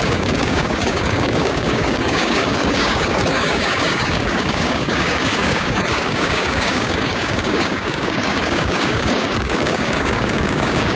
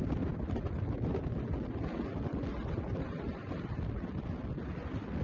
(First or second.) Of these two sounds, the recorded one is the second